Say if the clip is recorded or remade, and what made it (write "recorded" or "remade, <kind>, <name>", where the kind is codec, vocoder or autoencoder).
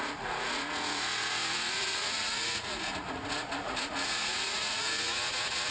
remade, vocoder, Vocos